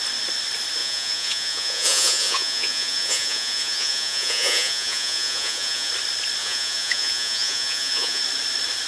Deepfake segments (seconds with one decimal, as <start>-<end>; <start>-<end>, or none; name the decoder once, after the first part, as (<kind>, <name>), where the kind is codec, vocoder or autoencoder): 0.8-5.9 (vocoder, Vocos); 6.4-8.2